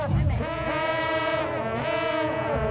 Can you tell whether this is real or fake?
fake